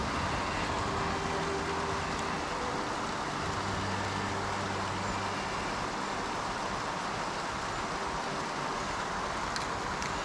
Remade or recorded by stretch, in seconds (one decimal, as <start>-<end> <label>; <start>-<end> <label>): 0.0-10.2 recorded